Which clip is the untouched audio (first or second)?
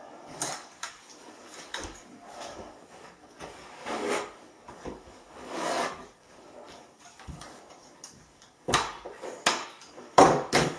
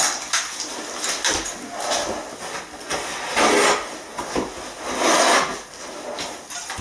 second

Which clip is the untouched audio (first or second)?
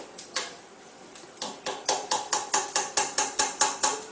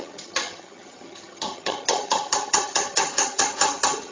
first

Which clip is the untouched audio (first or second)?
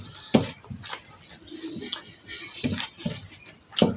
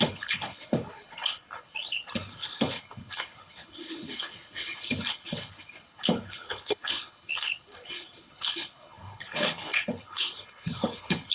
first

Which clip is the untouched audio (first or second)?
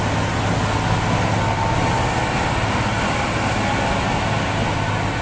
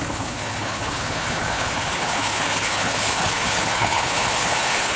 first